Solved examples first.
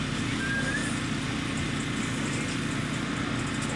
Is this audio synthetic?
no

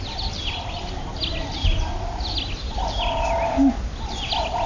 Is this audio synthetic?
no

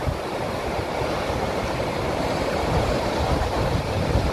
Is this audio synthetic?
yes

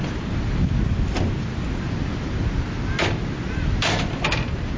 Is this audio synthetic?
no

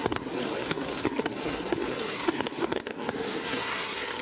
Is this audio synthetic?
yes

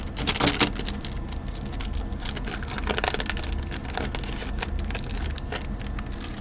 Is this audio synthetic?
no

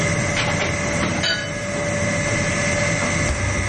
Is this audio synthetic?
no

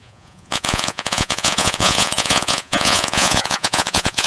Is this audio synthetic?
yes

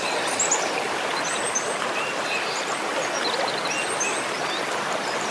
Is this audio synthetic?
no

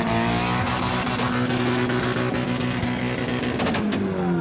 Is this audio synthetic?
no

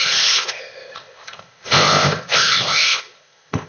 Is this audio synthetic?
yes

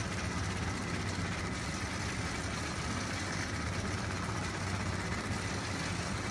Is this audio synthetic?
no